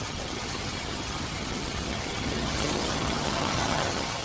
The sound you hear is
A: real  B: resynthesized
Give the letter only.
B